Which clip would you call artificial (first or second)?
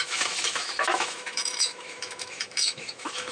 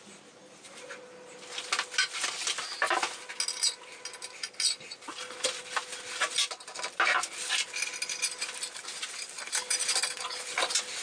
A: first